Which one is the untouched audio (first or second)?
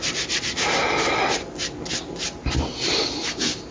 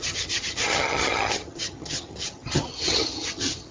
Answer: first